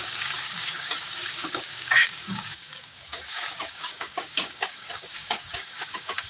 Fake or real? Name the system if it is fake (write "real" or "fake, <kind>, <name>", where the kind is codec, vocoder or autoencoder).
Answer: fake, codec, DAC